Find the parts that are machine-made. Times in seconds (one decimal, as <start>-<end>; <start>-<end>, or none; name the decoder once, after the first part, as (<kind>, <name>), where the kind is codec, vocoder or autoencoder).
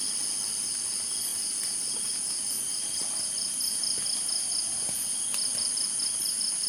none